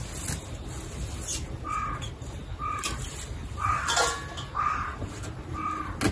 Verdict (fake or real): real